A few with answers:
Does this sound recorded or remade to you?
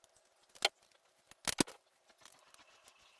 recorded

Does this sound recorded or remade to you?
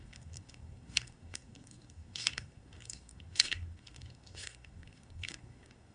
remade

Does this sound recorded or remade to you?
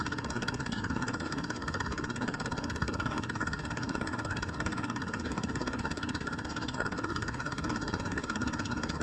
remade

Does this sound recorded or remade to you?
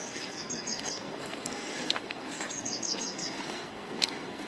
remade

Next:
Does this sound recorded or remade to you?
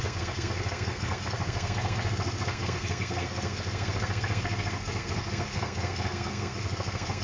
remade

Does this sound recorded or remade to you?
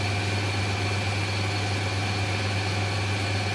recorded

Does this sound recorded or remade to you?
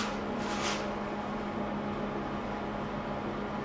recorded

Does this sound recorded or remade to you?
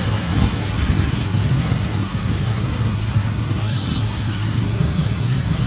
remade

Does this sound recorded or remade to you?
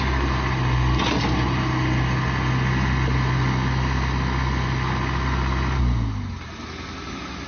recorded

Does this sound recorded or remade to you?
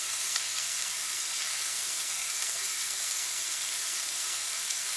remade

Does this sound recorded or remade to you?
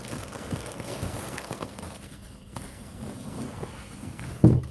remade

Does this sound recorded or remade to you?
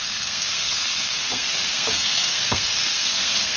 remade